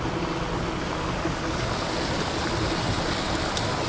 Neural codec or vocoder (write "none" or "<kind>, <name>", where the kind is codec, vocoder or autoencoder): none